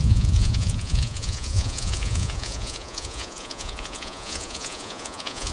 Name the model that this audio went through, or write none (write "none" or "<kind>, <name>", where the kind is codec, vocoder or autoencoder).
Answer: vocoder, Vocos